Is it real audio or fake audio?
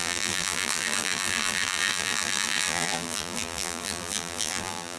fake